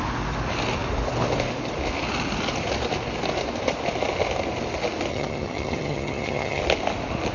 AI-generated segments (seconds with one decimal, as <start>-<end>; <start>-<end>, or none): 5.1-6.6